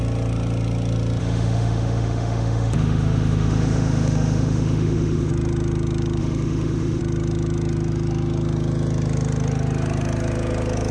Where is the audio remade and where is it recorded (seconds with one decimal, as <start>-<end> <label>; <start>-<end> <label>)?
0.0-1.2 recorded; 1.2-5.3 remade; 5.3-6.2 recorded; 6.2-7.0 remade; 7.0-10.9 recorded